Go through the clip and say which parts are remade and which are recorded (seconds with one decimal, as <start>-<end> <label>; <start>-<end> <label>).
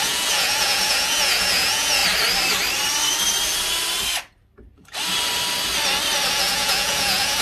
0.0-2.0 remade; 2.0-6.3 recorded; 6.3-7.4 remade